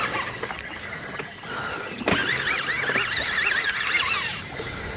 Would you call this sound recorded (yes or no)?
yes